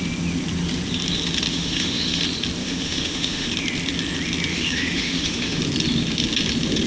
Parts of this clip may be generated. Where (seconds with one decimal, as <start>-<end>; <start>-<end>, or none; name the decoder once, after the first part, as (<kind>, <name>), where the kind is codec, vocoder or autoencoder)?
1.5-2.2 (autoencoder, DAC-VAE); 2.6-3.5; 4.5-5.6